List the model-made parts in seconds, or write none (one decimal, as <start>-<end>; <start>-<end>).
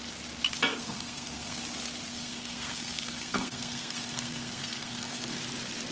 0.7-1.6; 2.1-5.4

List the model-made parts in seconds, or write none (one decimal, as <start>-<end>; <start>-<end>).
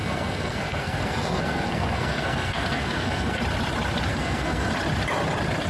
0.0-3.4; 4.1-4.7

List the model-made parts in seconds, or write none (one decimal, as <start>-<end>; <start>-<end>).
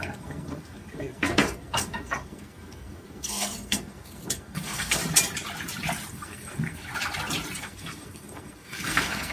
0.0-5.0; 6.1-6.9; 7.6-9.3